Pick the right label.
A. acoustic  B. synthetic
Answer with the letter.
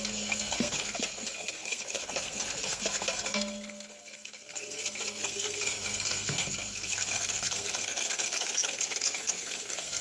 B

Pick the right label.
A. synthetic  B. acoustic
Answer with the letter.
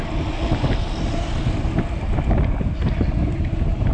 B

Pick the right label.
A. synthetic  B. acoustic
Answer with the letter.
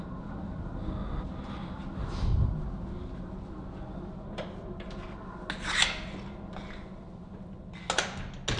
B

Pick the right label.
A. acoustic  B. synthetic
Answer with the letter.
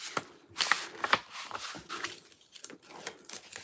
A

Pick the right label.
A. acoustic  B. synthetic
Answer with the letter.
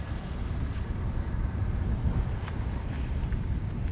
A